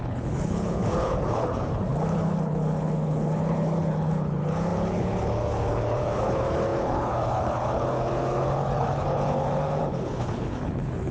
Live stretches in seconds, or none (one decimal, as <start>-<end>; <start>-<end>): none